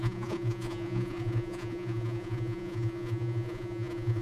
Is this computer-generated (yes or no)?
yes